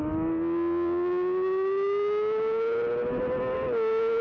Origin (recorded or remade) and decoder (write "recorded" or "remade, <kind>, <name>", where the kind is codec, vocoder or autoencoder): recorded